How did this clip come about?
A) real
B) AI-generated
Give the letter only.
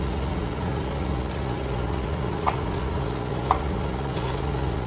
B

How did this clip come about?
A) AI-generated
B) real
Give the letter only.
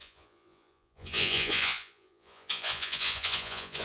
A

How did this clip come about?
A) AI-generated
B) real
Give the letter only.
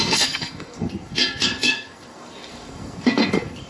A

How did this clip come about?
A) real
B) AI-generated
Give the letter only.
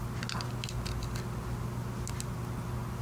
A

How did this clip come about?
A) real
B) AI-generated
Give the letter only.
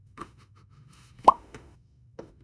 B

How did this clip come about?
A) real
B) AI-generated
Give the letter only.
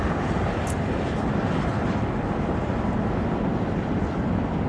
A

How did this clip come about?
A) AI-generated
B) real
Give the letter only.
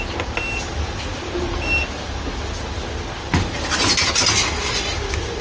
B